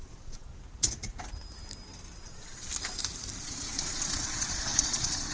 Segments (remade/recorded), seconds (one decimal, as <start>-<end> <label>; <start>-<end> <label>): 0.0-0.5 remade; 0.5-2.2 recorded; 2.2-2.7 remade; 2.7-3.4 recorded; 3.4-5.3 remade